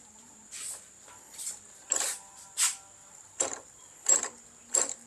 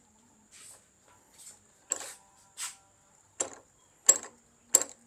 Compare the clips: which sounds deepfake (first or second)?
first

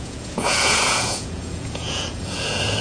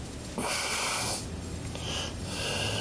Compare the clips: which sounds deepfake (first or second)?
first